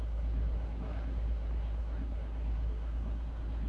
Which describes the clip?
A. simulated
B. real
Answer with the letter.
A